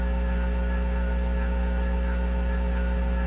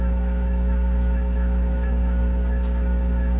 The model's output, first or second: second